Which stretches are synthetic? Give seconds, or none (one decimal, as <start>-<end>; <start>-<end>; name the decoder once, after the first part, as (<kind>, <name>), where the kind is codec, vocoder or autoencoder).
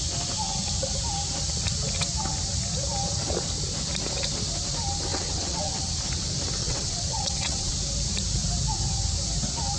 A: 5.1-5.9 (vocoder, WaveNeXt); 6.6-7.7